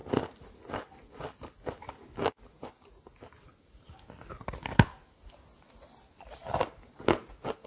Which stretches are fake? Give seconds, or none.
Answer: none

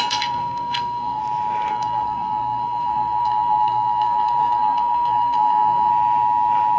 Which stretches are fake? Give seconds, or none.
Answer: 0.0-1.2 (codec, SNAC); 1.7-5.9

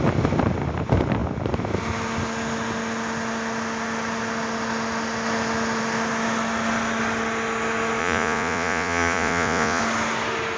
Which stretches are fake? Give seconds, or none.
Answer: 8.0-9.8 (vocoder, Vocos)

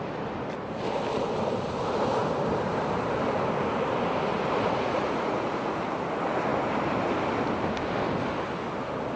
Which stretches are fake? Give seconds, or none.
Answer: 4.3-5.8 (vocoder, Vocos)

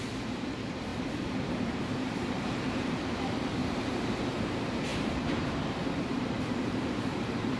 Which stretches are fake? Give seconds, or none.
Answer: 0.0-0.9 (vocoder, BigVGAN v2); 1.5-3.6; 4.4-7.6